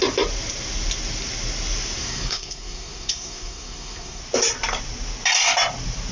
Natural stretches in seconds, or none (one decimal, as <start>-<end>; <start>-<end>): 0.0-2.0; 4.2-6.1